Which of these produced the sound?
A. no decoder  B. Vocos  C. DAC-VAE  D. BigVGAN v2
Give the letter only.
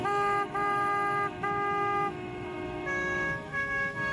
C